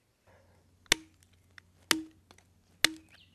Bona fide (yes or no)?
yes